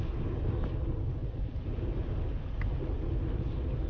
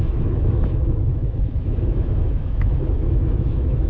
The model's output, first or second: second